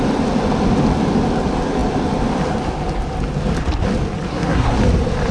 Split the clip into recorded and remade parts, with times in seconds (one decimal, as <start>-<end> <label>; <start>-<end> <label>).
0.0-4.3 recorded; 4.3-4.8 remade; 4.8-5.3 recorded